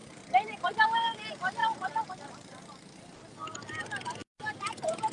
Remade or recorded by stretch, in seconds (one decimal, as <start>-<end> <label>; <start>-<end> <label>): 0.0-1.2 remade; 1.2-5.1 recorded

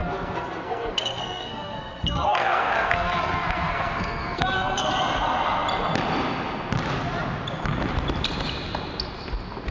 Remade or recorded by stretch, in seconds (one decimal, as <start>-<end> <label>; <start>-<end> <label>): 0.0-4.9 remade; 4.9-9.7 recorded